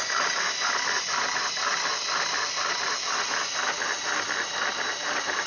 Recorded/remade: recorded